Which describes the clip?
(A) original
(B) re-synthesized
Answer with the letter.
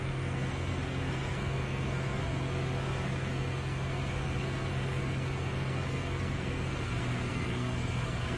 B